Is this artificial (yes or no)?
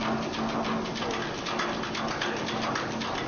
no